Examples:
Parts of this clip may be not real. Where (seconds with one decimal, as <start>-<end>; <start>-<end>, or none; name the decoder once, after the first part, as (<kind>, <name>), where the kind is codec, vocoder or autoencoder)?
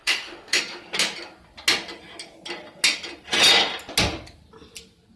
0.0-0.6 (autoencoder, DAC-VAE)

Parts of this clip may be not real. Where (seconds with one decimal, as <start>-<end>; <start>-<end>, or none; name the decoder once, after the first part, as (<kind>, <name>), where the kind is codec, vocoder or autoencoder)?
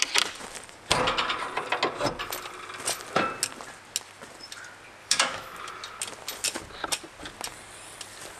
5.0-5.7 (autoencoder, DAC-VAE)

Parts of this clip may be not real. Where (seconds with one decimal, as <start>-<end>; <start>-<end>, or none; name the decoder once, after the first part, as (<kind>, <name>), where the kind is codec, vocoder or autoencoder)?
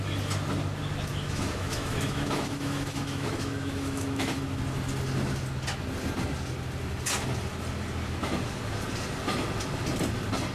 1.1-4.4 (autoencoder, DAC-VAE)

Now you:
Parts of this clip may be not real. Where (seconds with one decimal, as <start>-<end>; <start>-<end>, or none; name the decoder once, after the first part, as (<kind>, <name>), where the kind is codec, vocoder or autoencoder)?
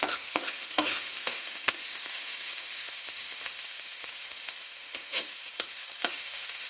0.0-6.7 (autoencoder, DAC-VAE)